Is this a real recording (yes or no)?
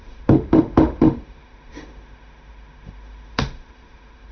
no